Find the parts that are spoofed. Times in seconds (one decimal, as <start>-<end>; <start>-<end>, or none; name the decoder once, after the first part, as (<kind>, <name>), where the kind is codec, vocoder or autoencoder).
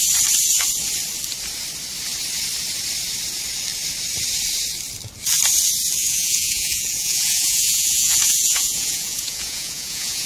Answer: 6.0-10.3 (vocoder, Vocos)